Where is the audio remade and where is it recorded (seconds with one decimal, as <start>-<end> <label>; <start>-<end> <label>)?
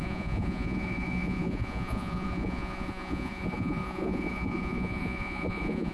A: 0.0-5.9 remade